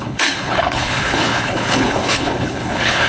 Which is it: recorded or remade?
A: remade